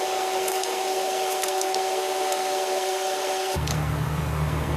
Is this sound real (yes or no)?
no